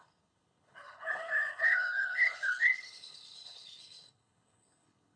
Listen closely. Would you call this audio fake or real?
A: fake